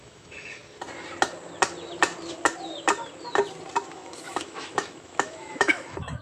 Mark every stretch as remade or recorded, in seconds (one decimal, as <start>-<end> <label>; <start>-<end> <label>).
0.0-0.6 remade; 0.6-3.9 recorded; 3.9-6.2 remade

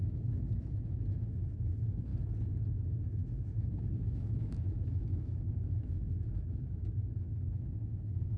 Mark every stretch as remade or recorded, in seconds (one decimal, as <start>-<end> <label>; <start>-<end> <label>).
0.0-2.1 remade; 2.1-2.6 recorded; 2.6-8.4 remade

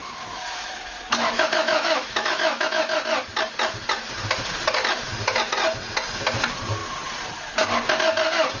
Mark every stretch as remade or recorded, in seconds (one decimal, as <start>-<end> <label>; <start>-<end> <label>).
0.0-3.0 remade; 3.0-8.6 recorded

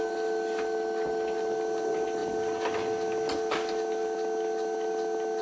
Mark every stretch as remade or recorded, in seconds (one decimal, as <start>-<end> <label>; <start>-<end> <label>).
0.0-5.4 recorded

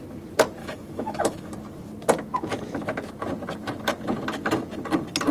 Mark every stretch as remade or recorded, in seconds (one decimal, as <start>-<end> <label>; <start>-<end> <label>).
0.0-0.6 recorded; 0.6-1.5 remade; 1.5-5.3 recorded

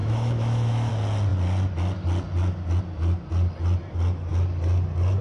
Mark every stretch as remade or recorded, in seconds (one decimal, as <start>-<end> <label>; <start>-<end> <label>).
0.0-0.9 remade; 0.9-5.2 recorded